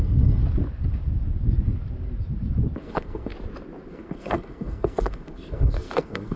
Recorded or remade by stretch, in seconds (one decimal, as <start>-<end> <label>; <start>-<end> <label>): 0.0-0.4 remade; 0.4-2.8 recorded; 2.8-3.3 remade; 3.3-3.9 recorded; 3.9-6.4 remade